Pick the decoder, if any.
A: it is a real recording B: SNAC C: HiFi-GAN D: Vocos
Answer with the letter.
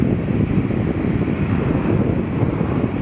A